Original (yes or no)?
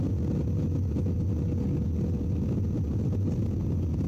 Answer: yes